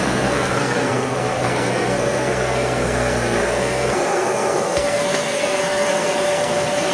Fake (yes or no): yes